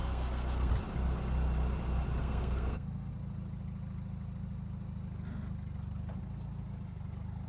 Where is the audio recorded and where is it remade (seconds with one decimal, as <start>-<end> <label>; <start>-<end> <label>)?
0.0-0.7 remade; 0.7-2.2 recorded; 2.2-3.1 remade; 3.1-7.5 recorded